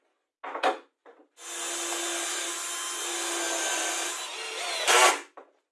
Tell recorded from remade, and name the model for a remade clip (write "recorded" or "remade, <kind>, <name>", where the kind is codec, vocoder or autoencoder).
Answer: recorded